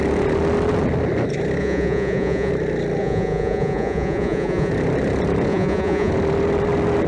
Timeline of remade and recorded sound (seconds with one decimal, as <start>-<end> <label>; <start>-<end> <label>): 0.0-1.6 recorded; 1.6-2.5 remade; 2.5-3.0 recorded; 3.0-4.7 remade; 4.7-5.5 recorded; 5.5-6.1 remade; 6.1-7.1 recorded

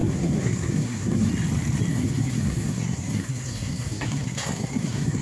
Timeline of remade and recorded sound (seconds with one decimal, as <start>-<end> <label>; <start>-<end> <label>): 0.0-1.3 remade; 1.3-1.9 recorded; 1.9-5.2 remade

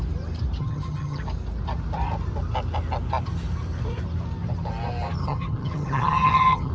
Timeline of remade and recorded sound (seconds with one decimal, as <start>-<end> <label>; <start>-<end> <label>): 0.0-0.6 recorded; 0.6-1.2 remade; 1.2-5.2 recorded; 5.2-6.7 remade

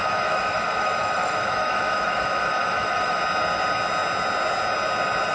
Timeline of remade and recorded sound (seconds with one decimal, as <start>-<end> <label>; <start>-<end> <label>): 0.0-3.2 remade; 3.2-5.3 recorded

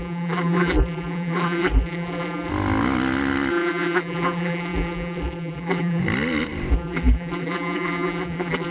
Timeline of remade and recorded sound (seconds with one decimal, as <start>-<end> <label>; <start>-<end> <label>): 0.0-2.5 remade; 2.5-3.5 recorded; 3.5-6.0 remade; 6.0-6.7 recorded; 6.7-8.7 remade

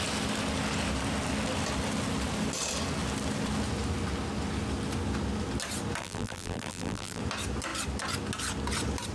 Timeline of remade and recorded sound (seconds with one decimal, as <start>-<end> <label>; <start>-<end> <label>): 0.0-6.0 recorded; 6.0-7.2 remade; 7.2-9.1 recorded